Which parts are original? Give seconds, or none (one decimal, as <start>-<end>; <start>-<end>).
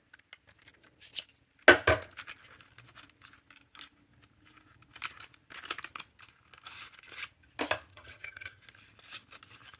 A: 0.0-7.9; 8.6-9.8